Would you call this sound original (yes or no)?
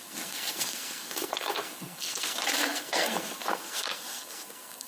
no